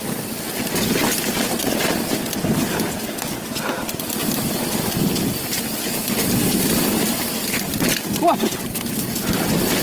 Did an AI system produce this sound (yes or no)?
no